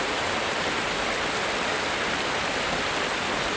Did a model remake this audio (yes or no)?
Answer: no